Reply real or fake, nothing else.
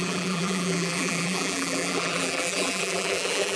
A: fake